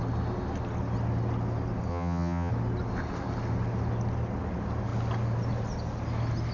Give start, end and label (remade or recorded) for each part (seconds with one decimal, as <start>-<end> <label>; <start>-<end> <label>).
0.0-1.9 recorded; 1.9-2.5 remade; 2.5-6.5 recorded